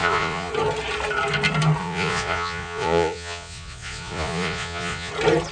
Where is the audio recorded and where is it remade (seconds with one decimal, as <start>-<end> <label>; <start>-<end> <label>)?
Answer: 0.0-0.5 remade; 0.5-1.8 recorded; 1.8-5.1 remade; 5.1-5.5 recorded